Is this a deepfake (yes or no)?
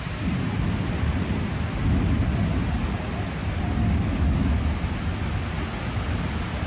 no